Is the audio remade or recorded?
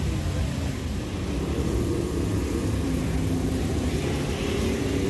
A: remade